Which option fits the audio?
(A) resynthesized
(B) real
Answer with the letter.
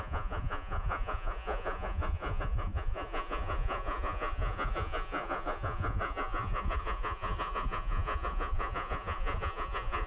A